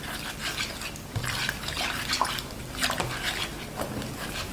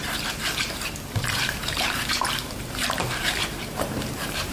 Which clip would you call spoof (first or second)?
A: second